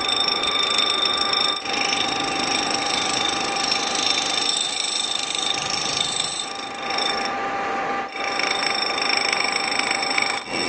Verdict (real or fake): real